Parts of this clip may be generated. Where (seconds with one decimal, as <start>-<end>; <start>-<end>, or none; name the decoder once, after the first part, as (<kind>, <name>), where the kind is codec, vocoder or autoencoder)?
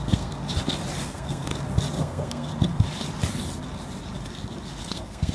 0.0-0.4 (codec, SNAC); 1.0-1.5; 2.0-2.5; 4.8-5.3